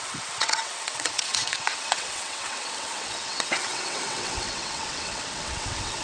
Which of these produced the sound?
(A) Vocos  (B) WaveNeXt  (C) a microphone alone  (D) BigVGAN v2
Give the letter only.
B